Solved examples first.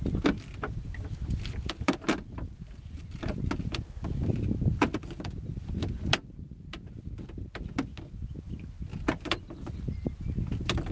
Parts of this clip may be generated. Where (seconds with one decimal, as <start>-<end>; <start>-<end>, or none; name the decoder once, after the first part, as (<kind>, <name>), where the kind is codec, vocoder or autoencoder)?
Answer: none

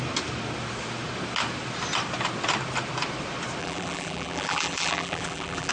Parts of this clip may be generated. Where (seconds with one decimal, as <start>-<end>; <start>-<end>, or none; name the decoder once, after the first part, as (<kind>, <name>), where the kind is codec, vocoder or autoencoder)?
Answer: 3.6-5.7 (vocoder, BigVGAN v2)

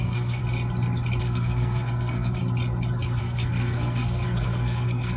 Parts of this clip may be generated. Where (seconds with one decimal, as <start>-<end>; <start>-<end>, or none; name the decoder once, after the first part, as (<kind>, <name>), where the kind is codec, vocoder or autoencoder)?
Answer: 0.0-0.4 (codec, SNAC); 1.2-2.4; 3.2-5.2

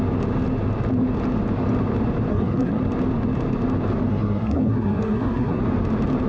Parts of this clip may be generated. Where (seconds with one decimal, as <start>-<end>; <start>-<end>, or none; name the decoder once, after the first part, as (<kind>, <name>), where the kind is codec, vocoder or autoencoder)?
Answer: 2.3-2.8 (codec, SNAC); 4.1-5.6

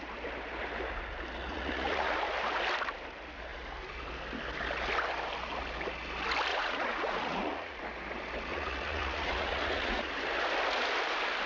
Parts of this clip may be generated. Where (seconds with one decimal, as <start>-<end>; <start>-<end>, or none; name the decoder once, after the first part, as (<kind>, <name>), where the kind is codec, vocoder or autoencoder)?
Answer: 1.4-2.2 (vocoder, Vocos); 6.5-7.8; 8.5-10.1

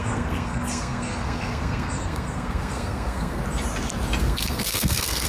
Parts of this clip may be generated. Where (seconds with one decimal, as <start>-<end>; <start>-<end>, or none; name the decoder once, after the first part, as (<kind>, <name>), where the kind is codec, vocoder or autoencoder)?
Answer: 0.0-3.4 (codec, SNAC); 4.2-5.3

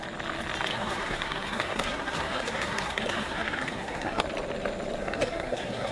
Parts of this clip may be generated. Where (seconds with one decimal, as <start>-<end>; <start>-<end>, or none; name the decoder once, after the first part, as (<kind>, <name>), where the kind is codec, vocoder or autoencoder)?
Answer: 0.7-4.2 (codec, SNAC); 5.0-5.9